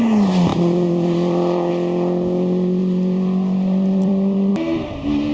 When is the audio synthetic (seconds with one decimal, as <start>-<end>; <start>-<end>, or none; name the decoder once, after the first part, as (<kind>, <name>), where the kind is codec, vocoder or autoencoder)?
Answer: 0.5-1.7 (vocoder, BigVGAN v2); 2.8-4.5